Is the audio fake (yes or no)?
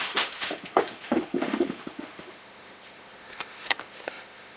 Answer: yes